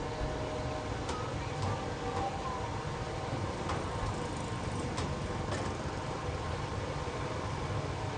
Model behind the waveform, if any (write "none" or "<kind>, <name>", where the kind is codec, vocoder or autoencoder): none